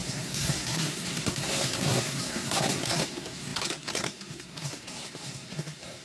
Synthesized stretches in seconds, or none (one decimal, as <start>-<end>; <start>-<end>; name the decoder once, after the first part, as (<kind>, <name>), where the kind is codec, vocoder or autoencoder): 0.0-6.0 (codec, SNAC)